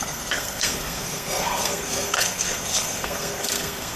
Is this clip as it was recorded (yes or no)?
no